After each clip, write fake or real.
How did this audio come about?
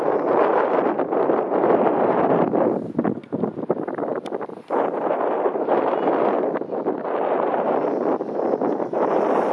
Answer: real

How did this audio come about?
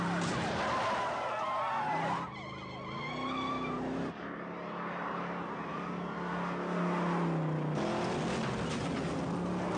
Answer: real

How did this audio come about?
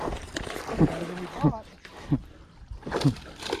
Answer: real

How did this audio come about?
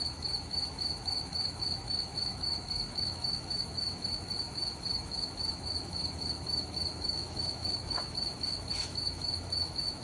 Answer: fake